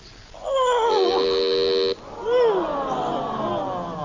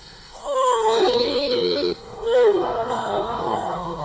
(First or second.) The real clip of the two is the first